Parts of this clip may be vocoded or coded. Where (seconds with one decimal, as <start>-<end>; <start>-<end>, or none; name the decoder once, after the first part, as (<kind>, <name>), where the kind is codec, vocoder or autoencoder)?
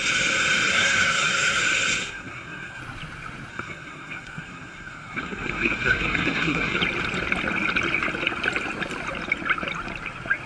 0.7-1.6 (codec, SNAC); 2.0-2.8; 3.5-6.8